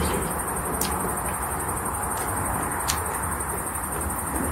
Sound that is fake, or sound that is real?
real